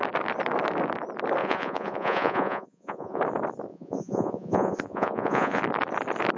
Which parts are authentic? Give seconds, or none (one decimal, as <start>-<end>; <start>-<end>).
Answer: 0.0-1.4; 3.2-3.7; 5.6-6.4